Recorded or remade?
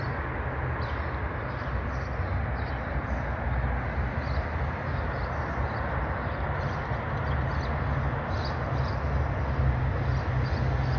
recorded